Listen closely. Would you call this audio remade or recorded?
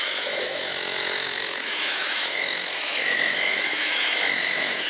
remade